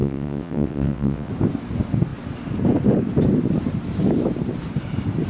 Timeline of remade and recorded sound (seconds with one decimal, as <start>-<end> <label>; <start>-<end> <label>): 0.0-1.3 remade; 1.3-5.3 recorded